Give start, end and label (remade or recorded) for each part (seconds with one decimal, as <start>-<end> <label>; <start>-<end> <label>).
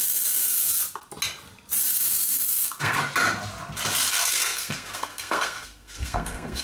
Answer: 0.0-0.8 remade; 0.8-1.8 recorded; 1.8-3.0 remade; 3.0-4.1 recorded; 4.1-6.6 remade